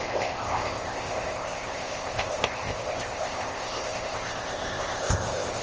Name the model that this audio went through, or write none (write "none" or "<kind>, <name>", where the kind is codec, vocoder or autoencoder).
codec, ZipCodec